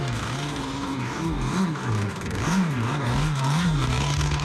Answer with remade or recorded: remade